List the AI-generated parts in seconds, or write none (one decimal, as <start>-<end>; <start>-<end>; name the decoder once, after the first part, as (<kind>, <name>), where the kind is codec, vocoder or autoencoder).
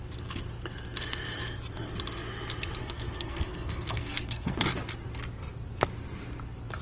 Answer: 2.8-4.6 (codec, SNAC)